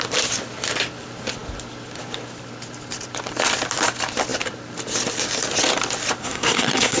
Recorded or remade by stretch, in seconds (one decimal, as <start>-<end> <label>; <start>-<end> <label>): 0.0-6.2 recorded; 6.2-7.0 remade